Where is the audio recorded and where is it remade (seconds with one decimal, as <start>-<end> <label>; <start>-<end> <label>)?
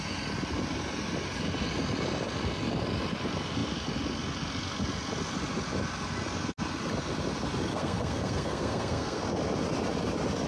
0.0-7.7 recorded; 7.7-9.2 remade; 9.2-10.5 recorded